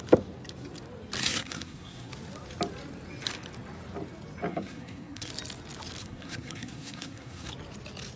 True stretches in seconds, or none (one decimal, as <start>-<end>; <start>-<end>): 0.0-1.2; 2.1-4.5; 5.3-6.0; 7.5-8.2